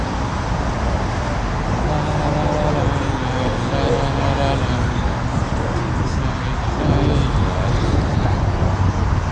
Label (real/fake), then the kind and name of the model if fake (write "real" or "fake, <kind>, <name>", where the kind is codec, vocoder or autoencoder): real